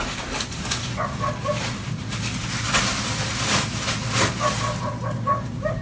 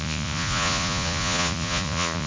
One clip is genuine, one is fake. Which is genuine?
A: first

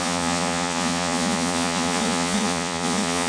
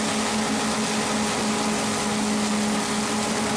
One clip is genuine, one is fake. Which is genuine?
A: second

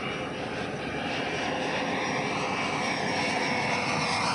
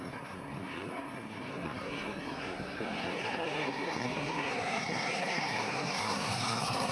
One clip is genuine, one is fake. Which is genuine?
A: first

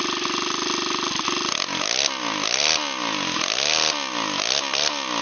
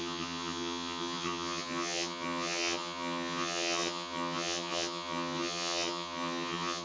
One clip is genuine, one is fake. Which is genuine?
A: first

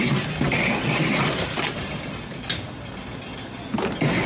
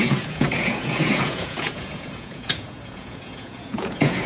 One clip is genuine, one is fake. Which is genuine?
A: first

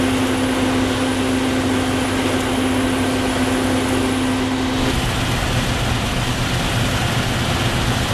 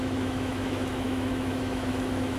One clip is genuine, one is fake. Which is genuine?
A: first